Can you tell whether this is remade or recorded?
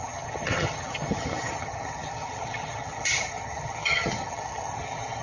remade